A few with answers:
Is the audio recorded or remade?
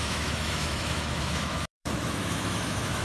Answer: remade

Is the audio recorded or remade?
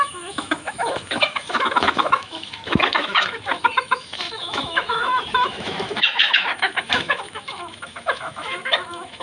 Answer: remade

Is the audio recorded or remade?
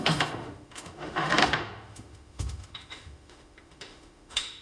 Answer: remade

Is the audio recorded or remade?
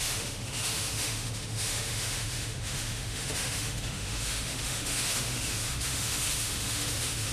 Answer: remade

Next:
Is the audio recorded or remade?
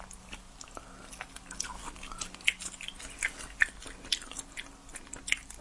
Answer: recorded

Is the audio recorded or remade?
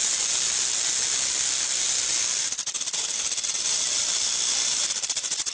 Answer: recorded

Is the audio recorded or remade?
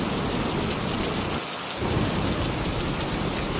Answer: recorded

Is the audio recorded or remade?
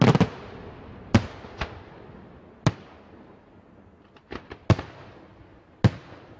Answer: recorded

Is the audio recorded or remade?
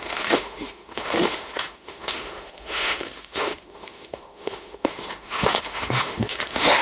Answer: remade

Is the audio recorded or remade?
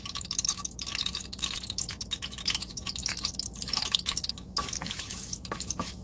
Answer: remade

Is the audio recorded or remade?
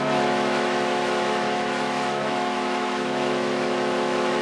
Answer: remade